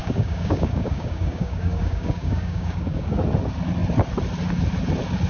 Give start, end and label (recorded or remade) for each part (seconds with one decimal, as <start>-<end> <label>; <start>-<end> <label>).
0.0-3.2 remade; 3.2-5.3 recorded